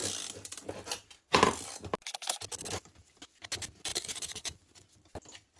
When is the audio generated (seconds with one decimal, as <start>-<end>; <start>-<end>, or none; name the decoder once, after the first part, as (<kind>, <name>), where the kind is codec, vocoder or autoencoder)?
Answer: 3.9-4.9 (vocoder, Vocos)